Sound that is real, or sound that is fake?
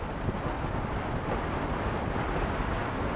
real